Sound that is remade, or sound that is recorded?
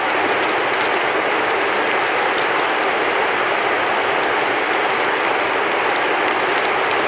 recorded